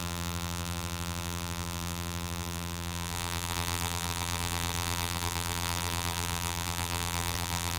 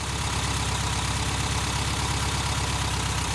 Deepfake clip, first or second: first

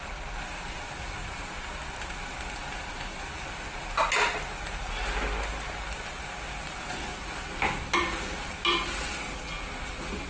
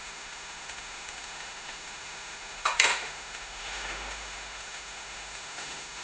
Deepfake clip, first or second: second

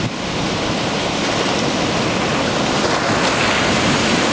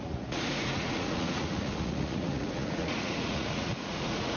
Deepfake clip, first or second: second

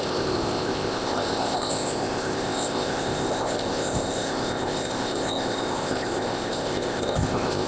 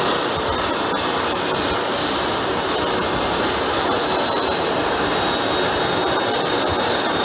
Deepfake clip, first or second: first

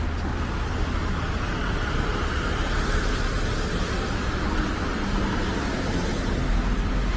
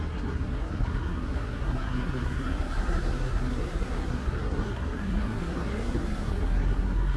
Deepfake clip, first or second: second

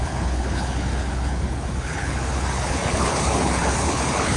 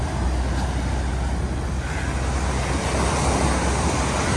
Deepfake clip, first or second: first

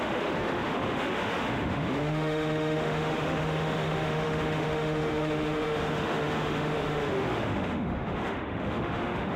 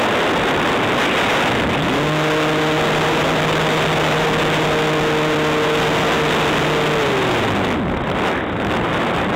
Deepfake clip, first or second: first